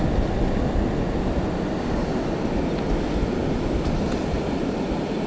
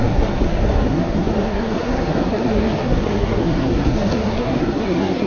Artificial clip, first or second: second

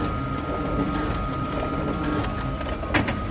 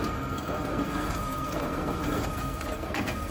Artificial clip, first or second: second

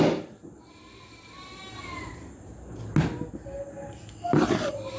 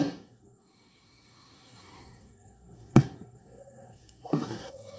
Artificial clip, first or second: second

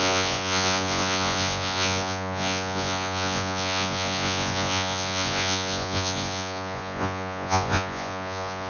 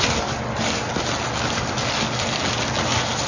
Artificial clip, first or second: first